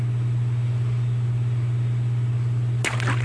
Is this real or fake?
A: real